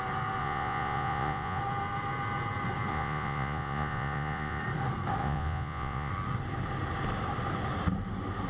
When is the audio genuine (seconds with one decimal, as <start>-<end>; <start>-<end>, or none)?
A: 0.0-0.4; 1.6-2.9; 4.6-5.2; 6.1-8.5